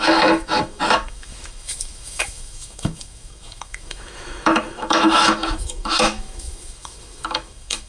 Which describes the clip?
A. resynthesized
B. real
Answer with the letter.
A